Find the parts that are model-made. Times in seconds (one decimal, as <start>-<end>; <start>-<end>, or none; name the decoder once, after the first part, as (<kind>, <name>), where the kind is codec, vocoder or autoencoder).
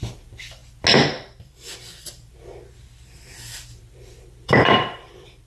0.0-0.6 (vocoder, BigVGAN v2); 3.9-5.5